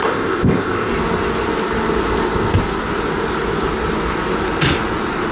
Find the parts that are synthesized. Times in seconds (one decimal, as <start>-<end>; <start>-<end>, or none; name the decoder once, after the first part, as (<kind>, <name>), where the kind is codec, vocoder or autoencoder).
0.0-0.9 (codec, ZipCodec)